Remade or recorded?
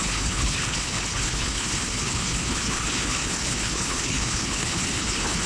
remade